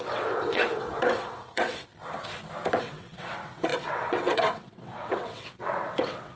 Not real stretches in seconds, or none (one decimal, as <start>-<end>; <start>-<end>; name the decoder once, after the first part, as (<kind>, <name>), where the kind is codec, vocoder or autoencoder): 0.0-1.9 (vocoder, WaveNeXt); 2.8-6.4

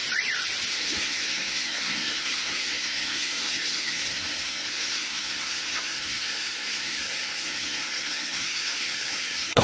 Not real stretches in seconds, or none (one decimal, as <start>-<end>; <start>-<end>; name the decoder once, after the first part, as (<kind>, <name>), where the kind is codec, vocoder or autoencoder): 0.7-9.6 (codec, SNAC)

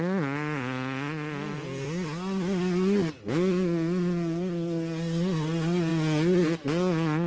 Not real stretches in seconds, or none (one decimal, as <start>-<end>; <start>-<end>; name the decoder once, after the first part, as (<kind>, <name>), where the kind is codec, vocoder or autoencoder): none

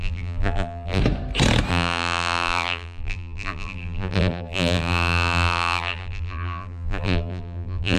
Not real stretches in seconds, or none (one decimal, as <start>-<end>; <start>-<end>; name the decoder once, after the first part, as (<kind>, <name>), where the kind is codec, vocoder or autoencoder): 0.0-1.0 (vocoder, BigVGAN v2); 1.7-8.0